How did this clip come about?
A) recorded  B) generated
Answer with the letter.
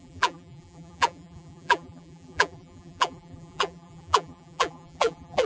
B